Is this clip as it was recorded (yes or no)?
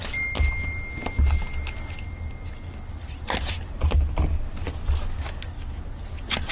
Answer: yes